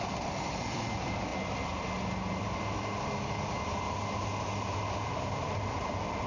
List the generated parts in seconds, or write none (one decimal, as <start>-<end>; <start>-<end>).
0.0-1.3; 4.9-6.3